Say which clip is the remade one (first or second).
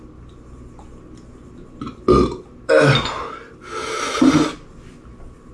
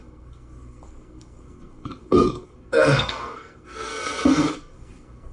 second